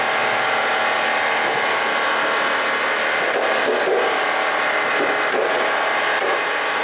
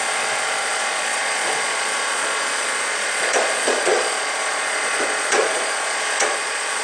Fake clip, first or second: second